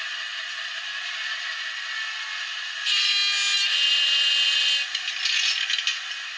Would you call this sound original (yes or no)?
yes